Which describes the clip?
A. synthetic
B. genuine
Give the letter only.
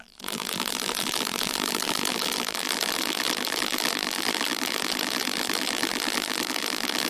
A